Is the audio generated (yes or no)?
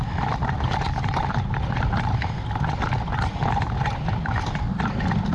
no